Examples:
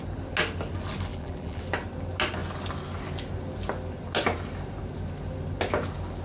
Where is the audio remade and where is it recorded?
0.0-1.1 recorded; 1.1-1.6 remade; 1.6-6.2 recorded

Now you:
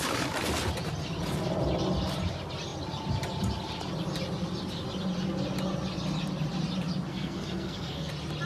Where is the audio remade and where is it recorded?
0.0-7.1 recorded; 7.1-8.1 remade; 8.1-8.5 recorded

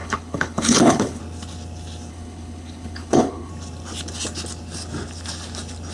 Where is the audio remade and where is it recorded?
0.0-1.2 remade; 1.2-2.1 recorded; 2.1-3.5 remade; 3.5-5.9 recorded